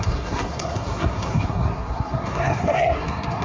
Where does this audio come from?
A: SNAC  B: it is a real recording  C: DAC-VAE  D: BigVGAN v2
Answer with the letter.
A